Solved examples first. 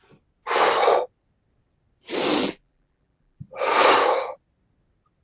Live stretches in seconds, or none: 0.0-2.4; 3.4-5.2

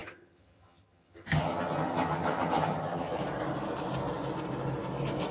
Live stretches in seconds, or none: 3.2-5.3

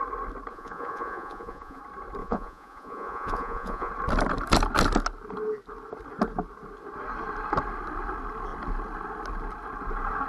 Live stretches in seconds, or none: 0.0-0.5; 1.8-2.2; 3.9-10.3

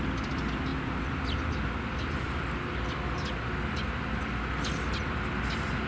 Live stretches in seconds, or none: 0.0-5.9

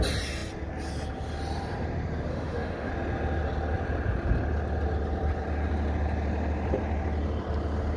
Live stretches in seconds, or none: 0.0-2.3; 2.9-8.0

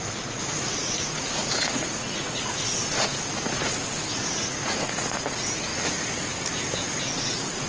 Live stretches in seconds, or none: 5.7-7.0

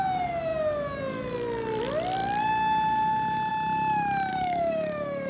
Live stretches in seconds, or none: 0.0-4.3